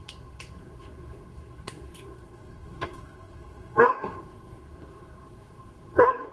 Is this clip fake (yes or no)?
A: yes